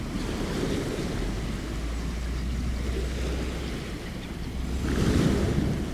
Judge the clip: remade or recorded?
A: recorded